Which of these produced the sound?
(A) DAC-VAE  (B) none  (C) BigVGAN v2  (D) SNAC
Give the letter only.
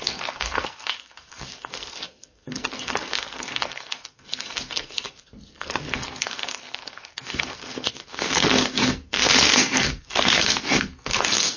D